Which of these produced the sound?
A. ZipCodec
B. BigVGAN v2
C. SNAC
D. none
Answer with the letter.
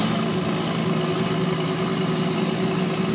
D